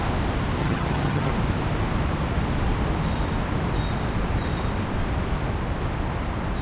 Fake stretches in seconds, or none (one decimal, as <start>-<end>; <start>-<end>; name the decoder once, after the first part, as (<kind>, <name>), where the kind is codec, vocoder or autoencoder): 0.6-1.3 (vocoder, HiFi-GAN)